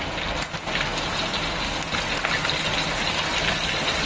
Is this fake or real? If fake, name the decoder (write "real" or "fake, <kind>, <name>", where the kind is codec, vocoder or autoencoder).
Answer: real